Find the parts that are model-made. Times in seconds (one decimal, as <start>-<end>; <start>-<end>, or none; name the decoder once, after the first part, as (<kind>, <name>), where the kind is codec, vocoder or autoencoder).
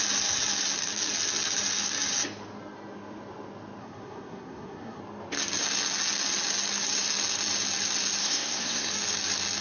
3.8-5.0 (codec, SNAC); 8.2-8.9